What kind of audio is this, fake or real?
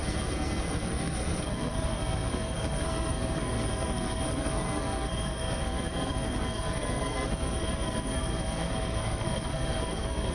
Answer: fake